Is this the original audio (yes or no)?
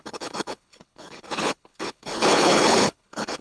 no